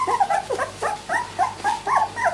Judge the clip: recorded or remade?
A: recorded